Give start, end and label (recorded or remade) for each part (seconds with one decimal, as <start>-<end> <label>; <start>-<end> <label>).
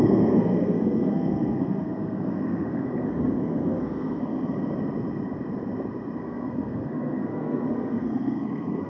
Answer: 0.0-4.3 remade; 4.3-6.2 recorded; 6.2-8.9 remade